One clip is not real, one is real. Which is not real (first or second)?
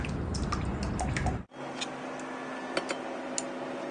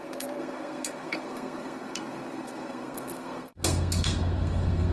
second